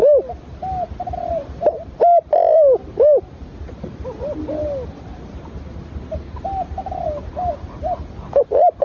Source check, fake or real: real